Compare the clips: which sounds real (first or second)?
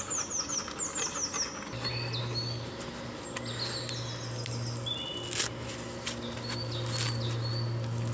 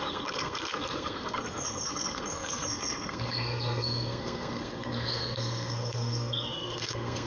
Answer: first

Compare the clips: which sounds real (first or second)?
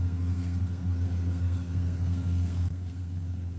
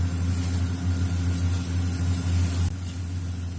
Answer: second